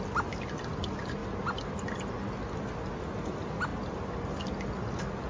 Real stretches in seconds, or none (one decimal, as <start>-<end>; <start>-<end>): 0.0-5.3